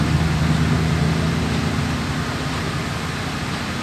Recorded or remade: recorded